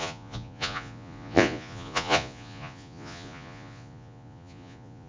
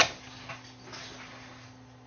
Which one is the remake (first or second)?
first